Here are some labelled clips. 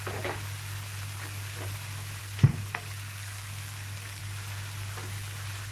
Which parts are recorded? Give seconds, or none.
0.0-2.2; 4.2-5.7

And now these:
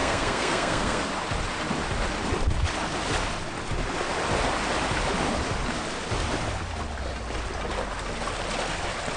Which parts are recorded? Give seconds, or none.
1.0-9.2

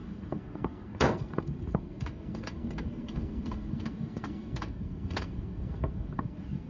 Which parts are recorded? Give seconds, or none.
none

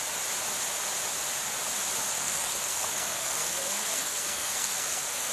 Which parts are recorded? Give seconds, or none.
0.0-2.1